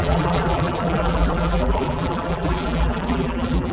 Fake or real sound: fake